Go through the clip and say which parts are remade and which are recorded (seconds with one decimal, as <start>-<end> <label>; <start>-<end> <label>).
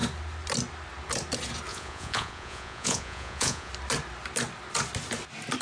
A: 0.0-1.7 recorded; 1.7-3.7 remade; 3.7-5.6 recorded